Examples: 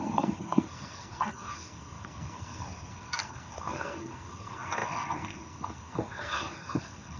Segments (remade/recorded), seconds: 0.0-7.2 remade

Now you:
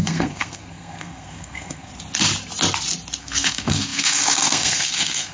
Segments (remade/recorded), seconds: 0.0-1.9 remade; 1.9-3.2 recorded; 3.2-5.3 remade